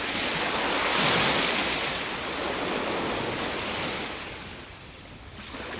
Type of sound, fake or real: real